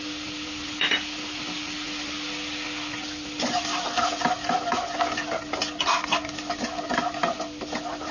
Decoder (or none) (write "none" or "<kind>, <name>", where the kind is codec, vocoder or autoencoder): none